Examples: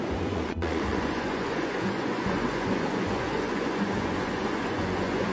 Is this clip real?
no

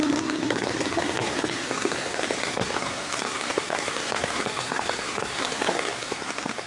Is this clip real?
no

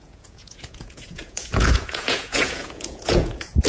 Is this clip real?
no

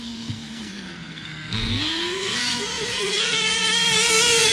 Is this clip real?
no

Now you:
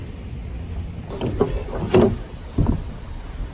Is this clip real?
yes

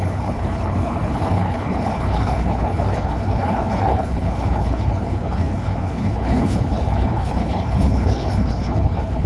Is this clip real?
no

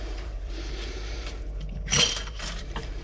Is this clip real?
no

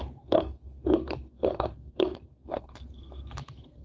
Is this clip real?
no